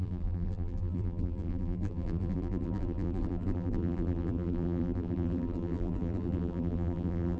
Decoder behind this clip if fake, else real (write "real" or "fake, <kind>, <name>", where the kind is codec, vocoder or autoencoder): fake, vocoder, BigVGAN v2